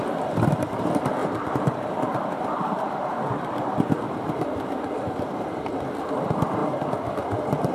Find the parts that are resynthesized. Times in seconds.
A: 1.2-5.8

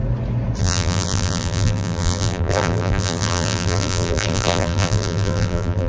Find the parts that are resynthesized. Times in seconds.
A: 0.6-5.9

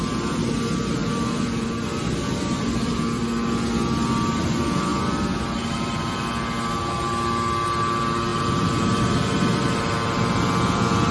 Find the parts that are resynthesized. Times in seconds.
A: 1.0-3.2; 4.9-6.4; 8.3-9.0

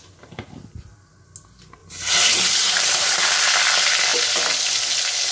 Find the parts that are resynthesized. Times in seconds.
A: 1.8-3.5

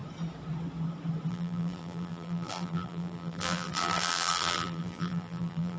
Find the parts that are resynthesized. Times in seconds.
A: 1.3-5.8

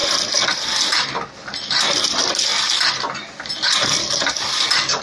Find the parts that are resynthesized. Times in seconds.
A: 1.3-2.5